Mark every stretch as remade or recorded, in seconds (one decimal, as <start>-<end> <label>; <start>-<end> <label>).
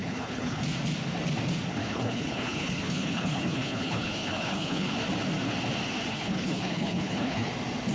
0.0-0.6 remade; 0.6-1.8 recorded; 1.8-4.9 remade; 4.9-6.1 recorded; 6.1-7.5 remade; 7.5-7.9 recorded